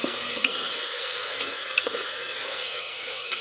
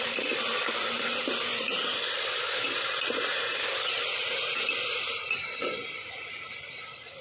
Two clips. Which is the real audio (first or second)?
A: second